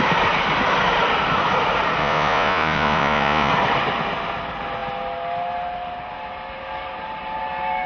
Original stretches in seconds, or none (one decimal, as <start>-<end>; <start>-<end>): 0.0-2.0; 3.5-7.9

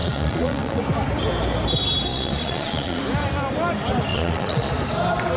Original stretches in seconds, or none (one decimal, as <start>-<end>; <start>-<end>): 0.8-2.1; 3.0-4.1; 4.7-5.4

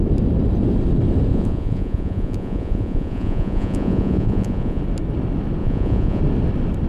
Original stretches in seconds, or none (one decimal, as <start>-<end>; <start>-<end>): 0.0-1.3; 4.8-5.6; 6.2-6.9

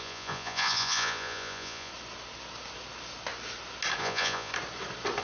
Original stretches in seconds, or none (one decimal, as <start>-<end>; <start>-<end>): 1.9-4.0; 4.5-5.2